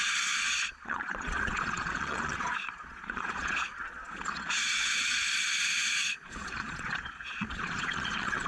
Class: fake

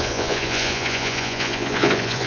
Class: fake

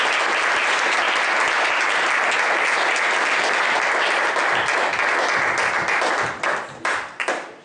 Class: real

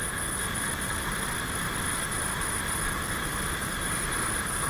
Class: real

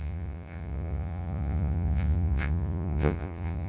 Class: fake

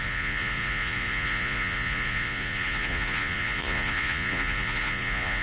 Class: fake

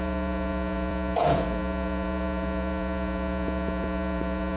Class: fake